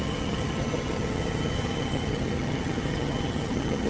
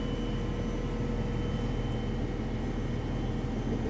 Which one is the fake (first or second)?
first